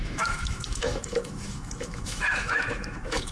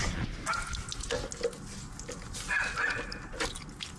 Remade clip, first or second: first